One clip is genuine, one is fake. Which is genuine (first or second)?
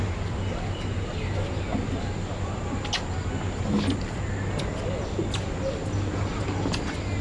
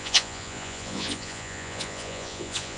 first